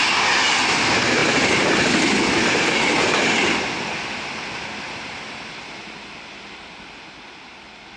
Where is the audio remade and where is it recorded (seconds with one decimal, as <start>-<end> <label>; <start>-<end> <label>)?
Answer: 0.0-8.0 recorded